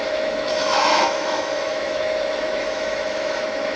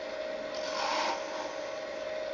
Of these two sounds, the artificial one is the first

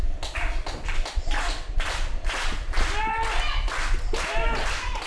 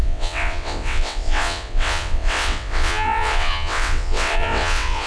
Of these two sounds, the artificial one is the second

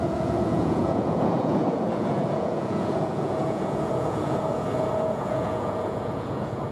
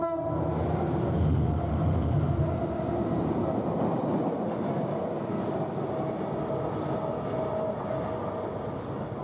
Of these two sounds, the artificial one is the first